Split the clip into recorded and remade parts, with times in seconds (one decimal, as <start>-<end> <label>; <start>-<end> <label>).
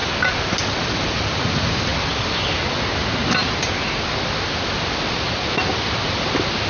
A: 0.0-6.7 recorded